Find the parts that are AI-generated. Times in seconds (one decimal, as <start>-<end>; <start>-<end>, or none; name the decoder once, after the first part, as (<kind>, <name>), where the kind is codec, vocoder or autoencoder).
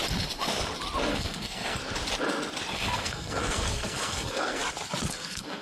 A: 1.1-1.8 (codec, SNAC); 2.7-4.6; 5.1-5.6